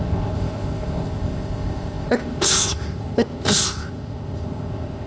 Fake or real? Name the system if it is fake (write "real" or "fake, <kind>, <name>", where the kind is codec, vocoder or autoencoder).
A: fake, codec, ZipCodec